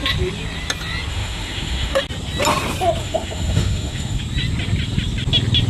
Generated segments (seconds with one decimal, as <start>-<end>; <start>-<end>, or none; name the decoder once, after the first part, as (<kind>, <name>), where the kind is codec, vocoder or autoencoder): 1.1-2.0 (autoencoder, DAC-VAE); 3.0-4.2